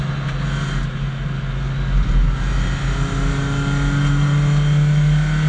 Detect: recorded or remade recorded